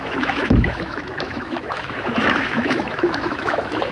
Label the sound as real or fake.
fake